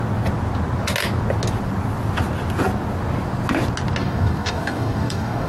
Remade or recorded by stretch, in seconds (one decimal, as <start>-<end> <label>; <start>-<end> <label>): 0.0-4.0 recorded; 4.0-5.5 remade